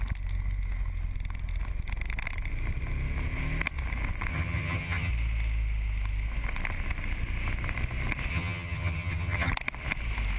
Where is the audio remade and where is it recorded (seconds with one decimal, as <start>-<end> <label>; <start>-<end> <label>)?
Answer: 0.0-4.3 recorded; 4.3-5.1 remade; 5.1-8.3 recorded; 8.3-9.5 remade; 9.5-10.4 recorded